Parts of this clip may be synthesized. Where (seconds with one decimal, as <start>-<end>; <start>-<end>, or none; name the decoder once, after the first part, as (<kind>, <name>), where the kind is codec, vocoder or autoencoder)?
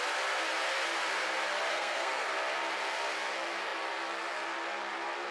1.7-2.3 (codec, SNAC)